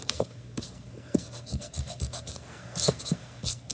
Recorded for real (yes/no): no